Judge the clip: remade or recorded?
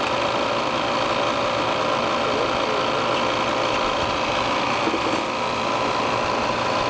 recorded